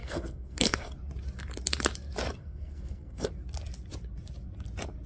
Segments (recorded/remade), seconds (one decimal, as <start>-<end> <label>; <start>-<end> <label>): 0.0-0.9 remade; 0.9-2.4 recorded; 2.4-3.3 remade; 3.3-5.1 recorded

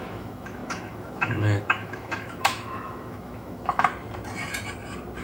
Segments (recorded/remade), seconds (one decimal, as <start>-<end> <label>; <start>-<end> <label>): 0.0-3.9 remade; 3.9-5.2 recorded

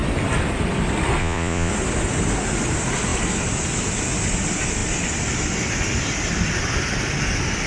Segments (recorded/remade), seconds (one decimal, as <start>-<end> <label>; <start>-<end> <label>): 0.0-1.2 recorded; 1.2-1.7 remade; 1.7-7.7 recorded